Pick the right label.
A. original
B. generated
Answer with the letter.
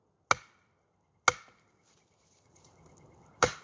A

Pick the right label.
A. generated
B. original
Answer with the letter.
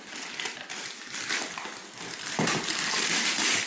A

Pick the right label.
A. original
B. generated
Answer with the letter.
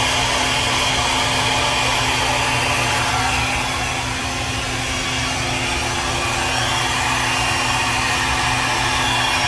A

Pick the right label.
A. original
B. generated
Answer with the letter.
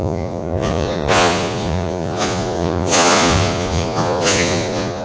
B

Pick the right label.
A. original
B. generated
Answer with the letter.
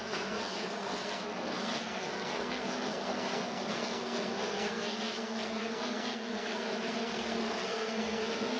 B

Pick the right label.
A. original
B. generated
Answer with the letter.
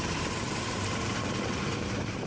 A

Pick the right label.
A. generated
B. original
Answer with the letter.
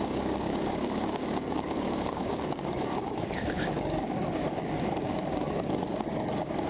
A